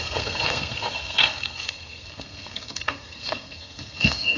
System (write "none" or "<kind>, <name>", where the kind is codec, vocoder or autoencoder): codec, SNAC